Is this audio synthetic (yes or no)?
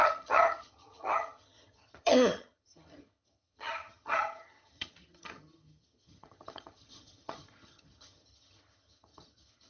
yes